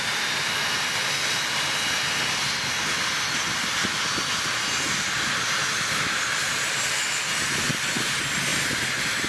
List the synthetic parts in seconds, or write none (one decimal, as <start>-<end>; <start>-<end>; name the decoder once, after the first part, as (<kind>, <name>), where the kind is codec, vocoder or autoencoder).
none

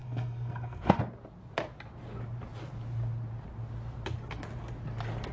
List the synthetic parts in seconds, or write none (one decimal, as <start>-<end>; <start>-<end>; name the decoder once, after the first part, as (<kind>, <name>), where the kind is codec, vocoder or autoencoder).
0.0-1.0 (codec, SNAC)

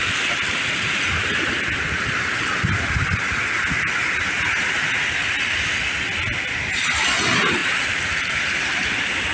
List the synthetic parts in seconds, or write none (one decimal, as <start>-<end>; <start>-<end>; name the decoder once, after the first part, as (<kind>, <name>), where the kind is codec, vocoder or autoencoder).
none

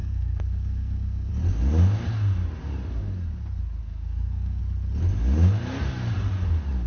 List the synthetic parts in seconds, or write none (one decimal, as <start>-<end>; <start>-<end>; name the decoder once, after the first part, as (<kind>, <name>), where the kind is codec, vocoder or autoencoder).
0.0-1.3 (codec, SNAC); 3.8-4.6

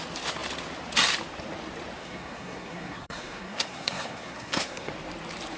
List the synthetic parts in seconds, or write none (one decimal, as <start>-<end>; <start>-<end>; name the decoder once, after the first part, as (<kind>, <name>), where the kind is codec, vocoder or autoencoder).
2.0-4.9 (codec, SNAC)

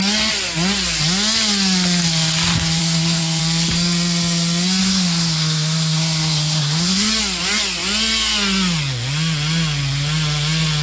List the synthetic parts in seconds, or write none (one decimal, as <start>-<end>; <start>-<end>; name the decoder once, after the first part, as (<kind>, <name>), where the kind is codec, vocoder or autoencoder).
2.8-3.4 (codec, SNAC); 4.8-7.1

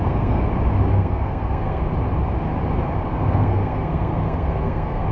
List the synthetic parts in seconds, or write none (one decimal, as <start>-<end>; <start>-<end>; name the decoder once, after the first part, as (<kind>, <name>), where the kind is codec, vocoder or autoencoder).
0.0-0.5 (codec, SNAC); 0.9-1.8; 3.1-5.1